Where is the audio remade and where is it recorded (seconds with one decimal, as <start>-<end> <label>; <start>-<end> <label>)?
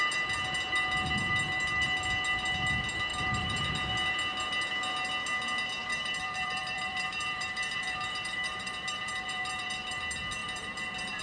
0.0-3.1 recorded; 3.1-3.7 remade; 3.7-5.8 recorded; 5.8-10.0 remade; 10.0-10.4 recorded; 10.4-11.2 remade